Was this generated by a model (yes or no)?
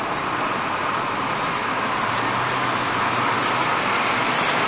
no